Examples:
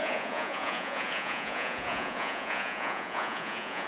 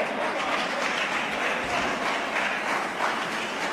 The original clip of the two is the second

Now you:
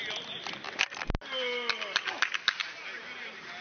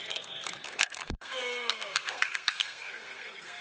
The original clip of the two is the first